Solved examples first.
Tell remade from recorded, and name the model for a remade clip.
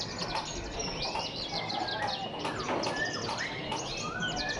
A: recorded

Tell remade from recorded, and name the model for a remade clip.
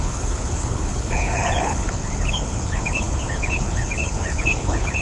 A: remade, codec, HILCodec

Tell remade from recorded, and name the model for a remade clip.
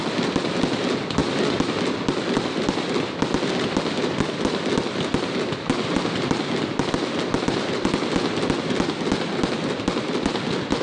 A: recorded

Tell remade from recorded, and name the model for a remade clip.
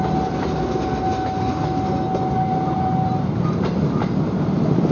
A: recorded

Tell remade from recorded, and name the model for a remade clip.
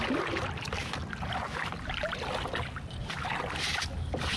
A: recorded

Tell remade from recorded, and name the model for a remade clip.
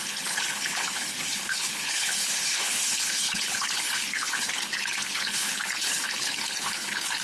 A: remade, codec, HILCodec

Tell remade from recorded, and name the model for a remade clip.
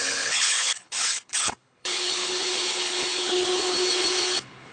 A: remade, codec, HILCodec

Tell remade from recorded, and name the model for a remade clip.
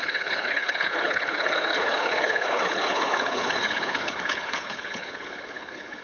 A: remade, codec, HILCodec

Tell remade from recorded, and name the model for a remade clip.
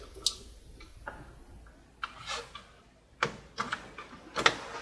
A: recorded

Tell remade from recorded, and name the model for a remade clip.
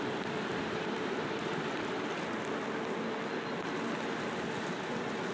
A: recorded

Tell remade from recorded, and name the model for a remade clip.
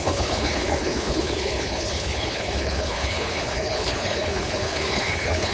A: remade, codec, HILCodec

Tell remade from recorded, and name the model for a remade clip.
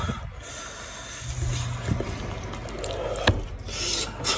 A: recorded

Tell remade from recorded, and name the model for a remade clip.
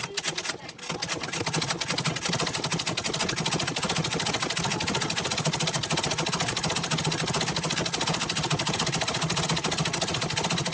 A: recorded